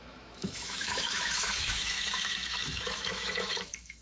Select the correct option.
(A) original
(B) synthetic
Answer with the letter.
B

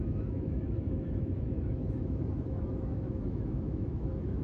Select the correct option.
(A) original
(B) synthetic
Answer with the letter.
B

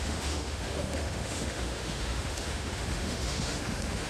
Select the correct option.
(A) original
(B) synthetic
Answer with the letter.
B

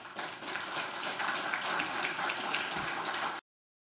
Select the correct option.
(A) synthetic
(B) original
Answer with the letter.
B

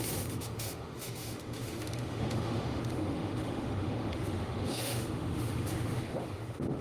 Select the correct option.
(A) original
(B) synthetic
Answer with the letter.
B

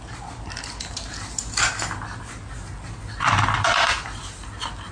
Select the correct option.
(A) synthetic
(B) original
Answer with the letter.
B